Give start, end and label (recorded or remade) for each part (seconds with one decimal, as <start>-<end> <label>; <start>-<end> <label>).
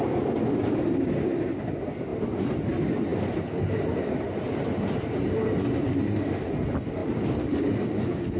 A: 0.0-2.1 recorded; 2.1-2.7 remade; 2.7-3.1 recorded; 3.1-5.2 remade; 5.2-8.4 recorded